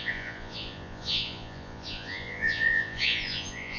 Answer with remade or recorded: remade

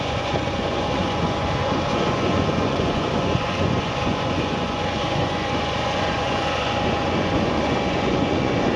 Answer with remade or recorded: remade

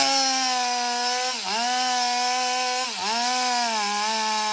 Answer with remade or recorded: recorded